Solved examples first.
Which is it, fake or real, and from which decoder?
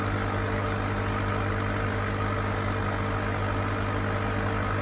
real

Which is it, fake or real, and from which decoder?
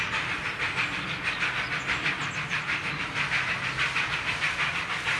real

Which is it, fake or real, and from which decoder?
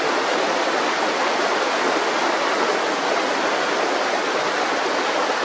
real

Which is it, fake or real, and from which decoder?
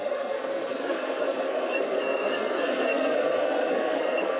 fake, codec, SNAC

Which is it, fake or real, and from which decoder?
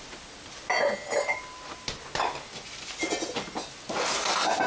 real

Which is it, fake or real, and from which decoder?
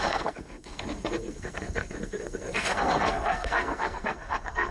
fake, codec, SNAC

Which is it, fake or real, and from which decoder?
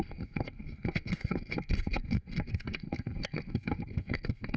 fake, codec, SNAC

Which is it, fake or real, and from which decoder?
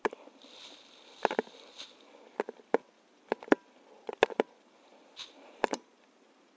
real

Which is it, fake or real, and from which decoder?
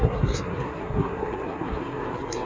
fake, codec, SNAC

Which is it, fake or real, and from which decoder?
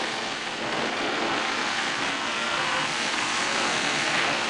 fake, codec, SNAC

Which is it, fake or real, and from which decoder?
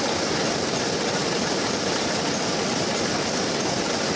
real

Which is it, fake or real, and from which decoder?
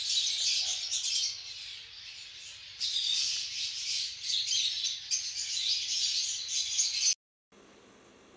real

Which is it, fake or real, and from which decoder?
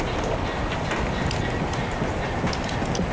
real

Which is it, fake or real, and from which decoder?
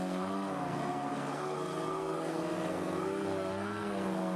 fake, codec, SNAC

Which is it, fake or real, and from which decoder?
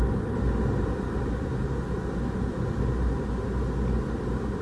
real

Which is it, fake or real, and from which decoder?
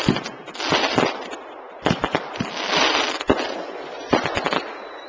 real